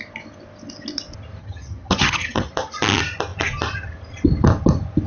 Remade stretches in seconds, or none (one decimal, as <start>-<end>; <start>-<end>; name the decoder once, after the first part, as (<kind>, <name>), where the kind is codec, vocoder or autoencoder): 1.4-2.5 (vocoder, HiFi-GAN)